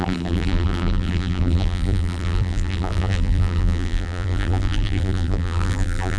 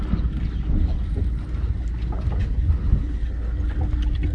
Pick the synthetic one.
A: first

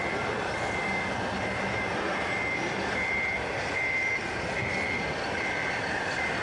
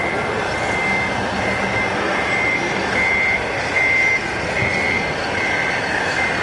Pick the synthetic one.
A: first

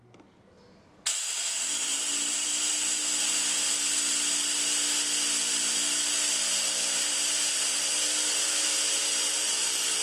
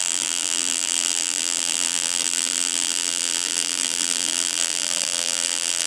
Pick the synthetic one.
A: second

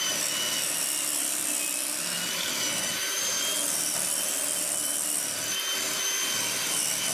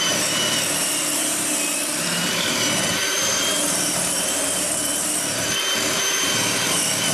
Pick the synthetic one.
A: second